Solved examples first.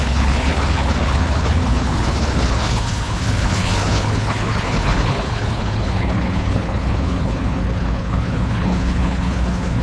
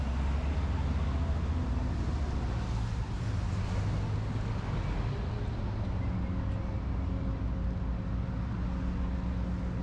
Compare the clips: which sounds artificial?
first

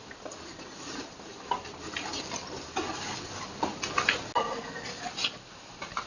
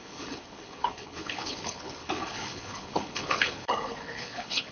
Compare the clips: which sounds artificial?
second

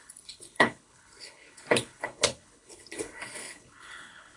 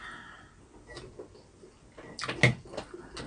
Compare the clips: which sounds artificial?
first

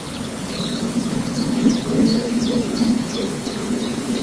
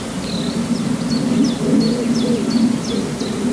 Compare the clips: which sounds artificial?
first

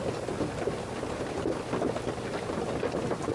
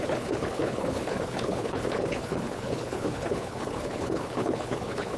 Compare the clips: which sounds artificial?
second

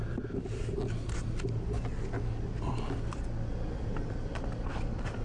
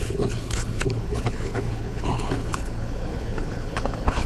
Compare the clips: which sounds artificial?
second